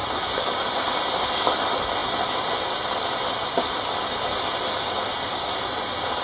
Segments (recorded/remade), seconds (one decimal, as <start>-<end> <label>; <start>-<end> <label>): 0.0-6.2 recorded